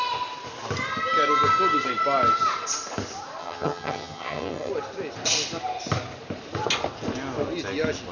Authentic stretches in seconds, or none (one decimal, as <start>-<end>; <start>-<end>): 0.0-3.4; 4.7-8.1